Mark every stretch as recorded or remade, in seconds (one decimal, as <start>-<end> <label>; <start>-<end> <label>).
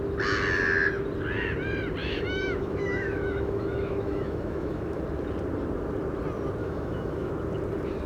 0.0-2.0 recorded; 2.0-5.0 remade; 5.0-6.6 recorded; 6.6-7.3 remade; 7.3-8.1 recorded